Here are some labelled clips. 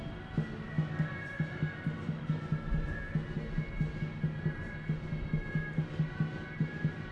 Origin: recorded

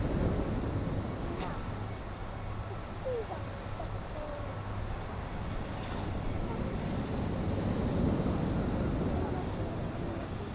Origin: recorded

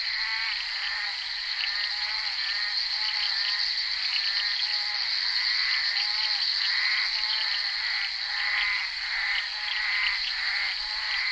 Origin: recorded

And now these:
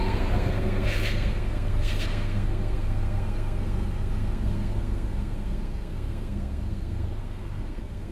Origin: remade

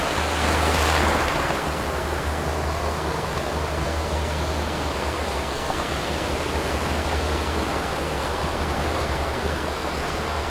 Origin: remade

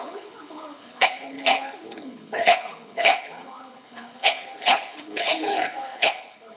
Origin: remade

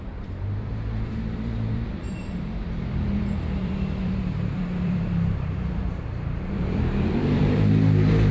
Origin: remade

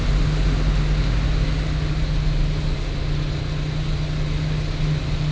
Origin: recorded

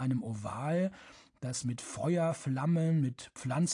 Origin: recorded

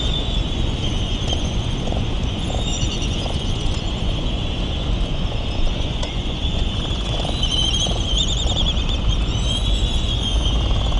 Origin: remade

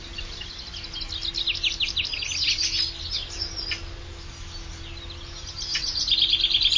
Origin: recorded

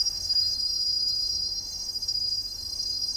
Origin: remade